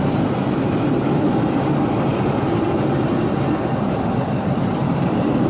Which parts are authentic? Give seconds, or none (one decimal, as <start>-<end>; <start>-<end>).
0.0-5.5